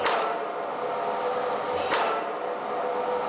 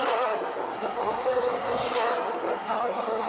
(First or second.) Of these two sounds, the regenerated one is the second